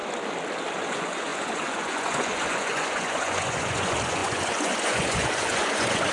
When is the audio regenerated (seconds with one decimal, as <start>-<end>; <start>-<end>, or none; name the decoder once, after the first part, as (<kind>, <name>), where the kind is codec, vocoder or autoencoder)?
0.7-6.1 (vocoder, Vocos)